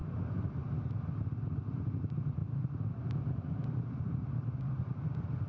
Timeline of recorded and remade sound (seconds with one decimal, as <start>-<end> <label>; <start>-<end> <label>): 0.0-1.1 remade; 1.1-2.4 recorded; 2.4-5.0 remade; 5.0-5.5 recorded